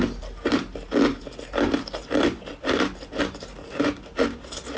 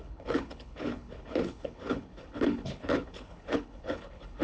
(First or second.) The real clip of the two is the first